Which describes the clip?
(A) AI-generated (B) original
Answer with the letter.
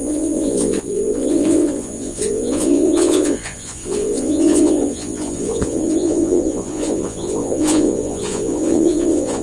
A